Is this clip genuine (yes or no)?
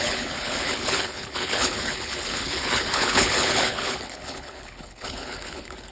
no